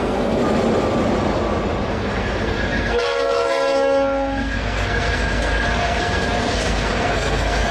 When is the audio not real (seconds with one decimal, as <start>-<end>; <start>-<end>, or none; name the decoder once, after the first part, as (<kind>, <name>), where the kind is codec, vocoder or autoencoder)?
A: 0.0-0.4 (codec, SNAC); 1.9-7.7